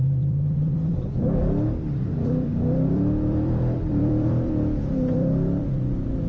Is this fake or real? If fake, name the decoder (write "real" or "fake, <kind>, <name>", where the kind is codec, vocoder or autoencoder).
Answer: fake, vocoder, BigVGAN v2